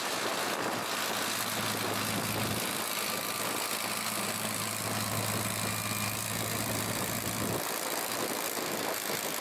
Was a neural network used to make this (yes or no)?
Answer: no